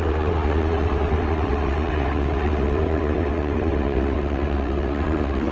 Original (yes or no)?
no